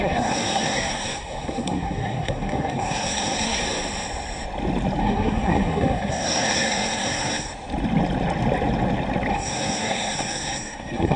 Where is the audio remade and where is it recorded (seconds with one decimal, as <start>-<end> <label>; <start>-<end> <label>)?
0.0-3.6 remade; 3.6-5.0 recorded; 5.0-7.5 remade; 7.5-9.3 recorded; 9.3-11.2 remade